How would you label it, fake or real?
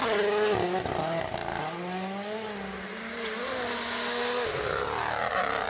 real